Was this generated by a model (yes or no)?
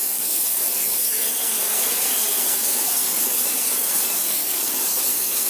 yes